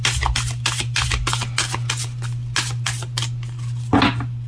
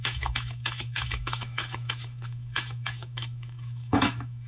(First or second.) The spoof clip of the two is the second